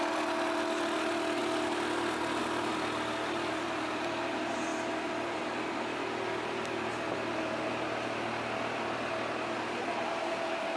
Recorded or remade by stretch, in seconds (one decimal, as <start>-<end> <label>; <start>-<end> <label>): 0.0-10.8 recorded